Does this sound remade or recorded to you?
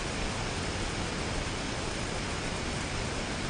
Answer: recorded